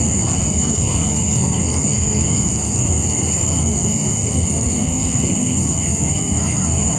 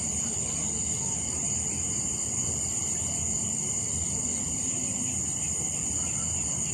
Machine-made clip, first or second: first